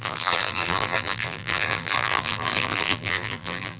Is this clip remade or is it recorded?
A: remade